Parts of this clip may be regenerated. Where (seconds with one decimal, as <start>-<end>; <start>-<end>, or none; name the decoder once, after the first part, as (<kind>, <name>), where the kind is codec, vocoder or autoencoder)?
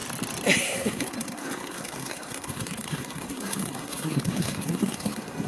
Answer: 0.6-5.5 (codec, SNAC)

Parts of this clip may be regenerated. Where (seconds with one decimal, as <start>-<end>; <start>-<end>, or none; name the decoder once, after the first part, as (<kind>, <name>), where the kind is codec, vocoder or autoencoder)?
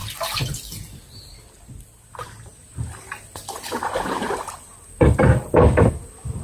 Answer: none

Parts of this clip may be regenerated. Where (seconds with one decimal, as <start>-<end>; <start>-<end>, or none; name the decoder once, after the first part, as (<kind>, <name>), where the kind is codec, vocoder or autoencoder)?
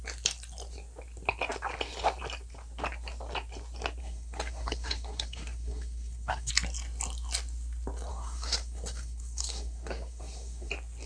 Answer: 4.0-6.5 (codec, SNAC); 8.1-10.7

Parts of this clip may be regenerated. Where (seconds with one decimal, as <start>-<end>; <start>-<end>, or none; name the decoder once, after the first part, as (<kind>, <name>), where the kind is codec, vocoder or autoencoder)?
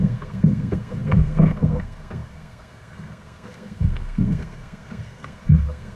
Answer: 0.0-6.0 (codec, SNAC)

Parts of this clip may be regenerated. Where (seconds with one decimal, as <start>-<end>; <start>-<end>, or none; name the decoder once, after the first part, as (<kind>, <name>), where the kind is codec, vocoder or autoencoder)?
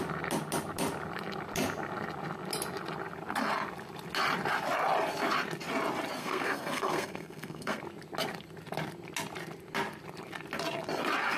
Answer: 6.2-7.8 (codec, SNAC)